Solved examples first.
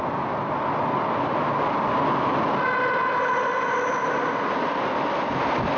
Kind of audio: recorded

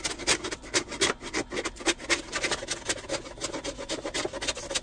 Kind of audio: recorded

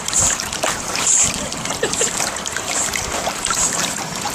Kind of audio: remade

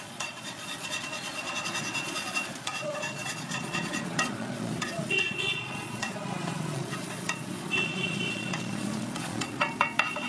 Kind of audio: remade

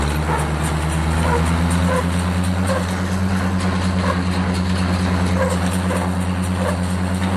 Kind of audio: recorded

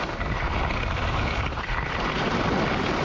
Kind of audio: recorded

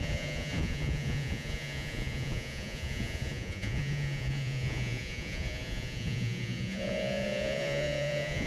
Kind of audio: remade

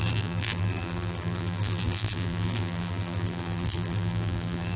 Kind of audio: remade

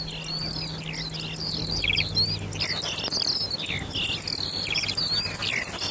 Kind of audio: recorded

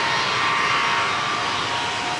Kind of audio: recorded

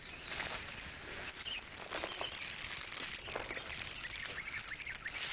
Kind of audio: recorded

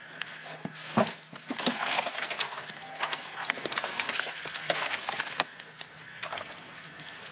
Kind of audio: remade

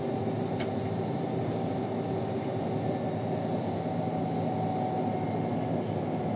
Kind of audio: recorded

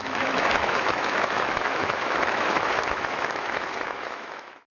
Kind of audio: remade